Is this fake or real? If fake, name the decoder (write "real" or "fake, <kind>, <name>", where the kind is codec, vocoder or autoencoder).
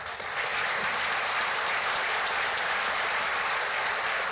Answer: fake, vocoder, BigVGAN v2